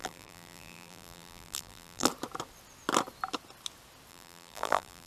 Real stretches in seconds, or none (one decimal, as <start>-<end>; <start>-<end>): 2.1-4.1